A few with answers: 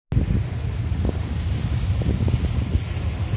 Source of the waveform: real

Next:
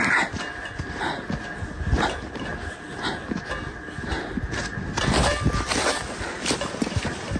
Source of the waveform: real